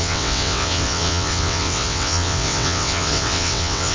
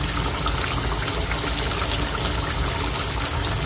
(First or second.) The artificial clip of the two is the first